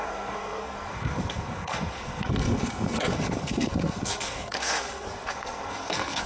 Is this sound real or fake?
fake